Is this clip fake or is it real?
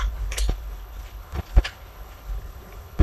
fake